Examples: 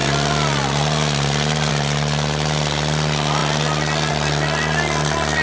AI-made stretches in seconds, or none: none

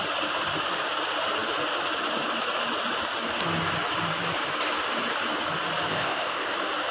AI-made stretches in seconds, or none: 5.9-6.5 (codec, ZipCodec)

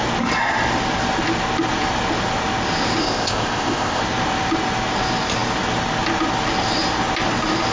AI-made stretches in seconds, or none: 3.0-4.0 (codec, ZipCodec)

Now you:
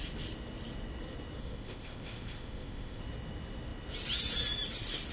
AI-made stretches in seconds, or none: 1.4-3.0 (codec, ZipCodec)

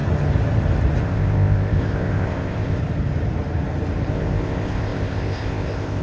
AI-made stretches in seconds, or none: 1.0-2.8 (codec, ZipCodec); 4.1-6.0

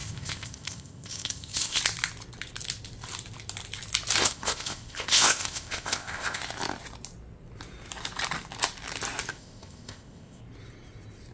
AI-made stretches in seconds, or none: 0.0-1.8 (codec, ZipCodec); 4.2-6.4; 9.3-10.4

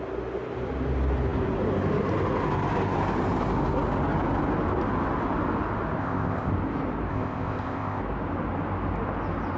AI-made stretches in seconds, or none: 6.0-6.5 (codec, ZipCodec); 7.1-8.0